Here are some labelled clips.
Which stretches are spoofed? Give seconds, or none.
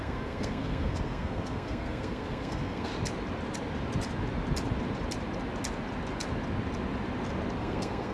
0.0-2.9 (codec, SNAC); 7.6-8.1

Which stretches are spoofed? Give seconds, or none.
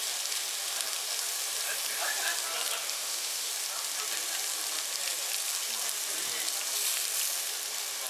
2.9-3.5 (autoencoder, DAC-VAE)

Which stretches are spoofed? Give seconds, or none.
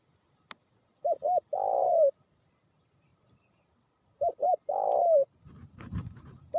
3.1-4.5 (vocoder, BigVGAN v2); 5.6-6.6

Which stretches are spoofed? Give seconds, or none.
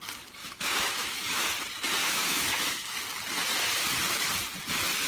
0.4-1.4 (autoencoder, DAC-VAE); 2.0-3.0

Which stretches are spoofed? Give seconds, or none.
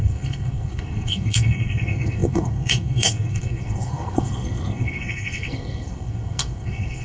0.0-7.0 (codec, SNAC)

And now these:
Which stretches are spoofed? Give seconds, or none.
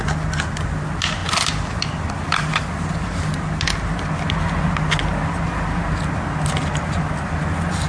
none